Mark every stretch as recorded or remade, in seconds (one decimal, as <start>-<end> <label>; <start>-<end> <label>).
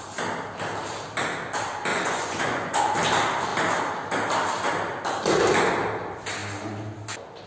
0.0-1.9 recorded; 1.9-2.8 remade; 2.8-7.5 recorded